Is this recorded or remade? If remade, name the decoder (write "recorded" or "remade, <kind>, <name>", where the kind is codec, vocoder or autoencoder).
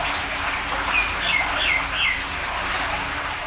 recorded